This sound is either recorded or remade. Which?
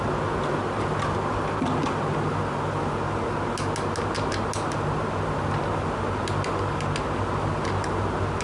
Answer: recorded